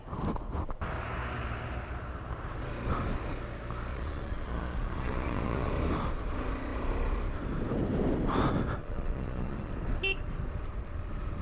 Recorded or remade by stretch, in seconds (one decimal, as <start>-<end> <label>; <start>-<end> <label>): 0.0-3.9 recorded; 3.9-5.7 remade; 5.7-8.8 recorded; 8.8-9.7 remade; 9.7-11.4 recorded